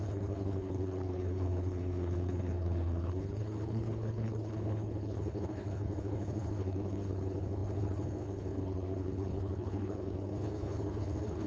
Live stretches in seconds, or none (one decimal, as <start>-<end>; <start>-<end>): none

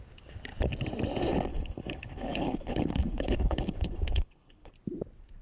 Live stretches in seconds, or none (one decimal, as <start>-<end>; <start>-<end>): 0.0-1.5; 4.7-5.4